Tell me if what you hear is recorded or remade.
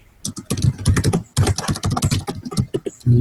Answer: recorded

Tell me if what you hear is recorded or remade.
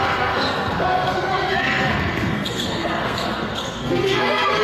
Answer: remade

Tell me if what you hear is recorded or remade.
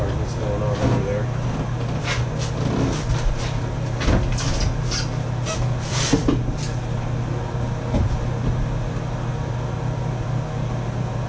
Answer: recorded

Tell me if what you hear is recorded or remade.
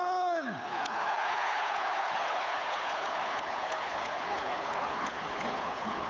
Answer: remade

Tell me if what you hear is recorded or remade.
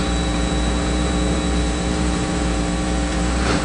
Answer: remade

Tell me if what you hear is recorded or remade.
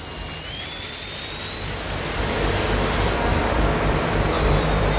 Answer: remade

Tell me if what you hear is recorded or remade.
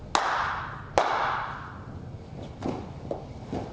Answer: recorded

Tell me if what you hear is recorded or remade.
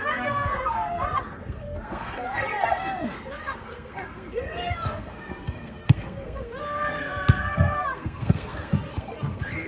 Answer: remade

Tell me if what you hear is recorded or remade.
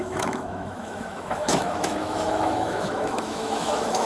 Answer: remade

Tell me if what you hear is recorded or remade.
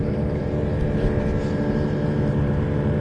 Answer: remade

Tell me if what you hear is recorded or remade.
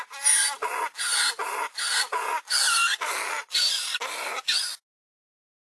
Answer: recorded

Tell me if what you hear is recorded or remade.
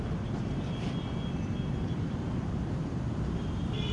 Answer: remade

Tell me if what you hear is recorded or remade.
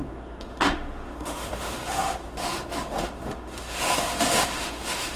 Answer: remade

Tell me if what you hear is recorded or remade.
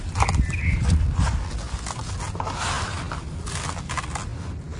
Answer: recorded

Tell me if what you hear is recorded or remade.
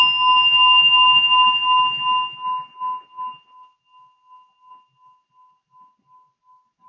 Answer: recorded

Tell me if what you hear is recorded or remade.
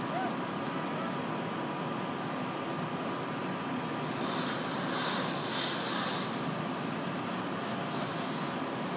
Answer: recorded